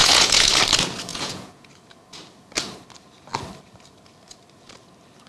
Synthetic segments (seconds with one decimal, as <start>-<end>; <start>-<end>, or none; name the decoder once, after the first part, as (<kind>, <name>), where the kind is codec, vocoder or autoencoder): 0.0-0.5 (vocoder, Vocos); 1.1-1.7